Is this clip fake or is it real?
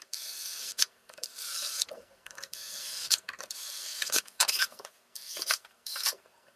fake